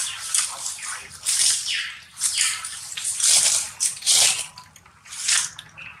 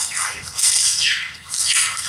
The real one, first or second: first